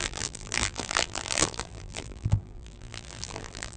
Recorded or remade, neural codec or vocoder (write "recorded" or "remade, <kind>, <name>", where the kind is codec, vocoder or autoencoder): remade, vocoder, BigVGAN v2